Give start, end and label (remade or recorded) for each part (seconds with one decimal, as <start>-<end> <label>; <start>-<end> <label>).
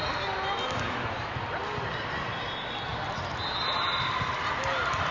0.0-5.1 recorded